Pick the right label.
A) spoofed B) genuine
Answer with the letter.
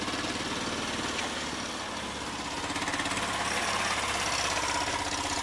B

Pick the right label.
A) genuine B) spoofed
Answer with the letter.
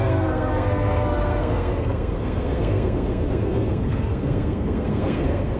B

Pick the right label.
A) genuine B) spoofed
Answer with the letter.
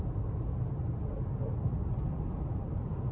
A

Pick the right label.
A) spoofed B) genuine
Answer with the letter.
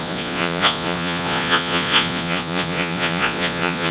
A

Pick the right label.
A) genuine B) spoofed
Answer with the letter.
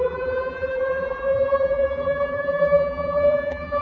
B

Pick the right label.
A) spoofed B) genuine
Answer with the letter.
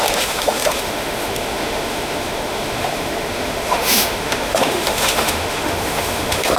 A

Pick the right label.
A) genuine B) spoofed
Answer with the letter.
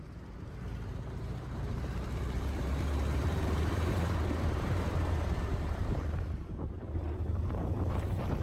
B